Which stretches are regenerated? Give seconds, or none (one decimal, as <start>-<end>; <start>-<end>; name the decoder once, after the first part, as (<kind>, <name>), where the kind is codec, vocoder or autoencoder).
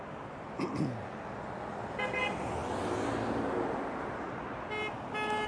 none